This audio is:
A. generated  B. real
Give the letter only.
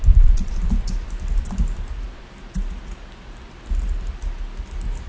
B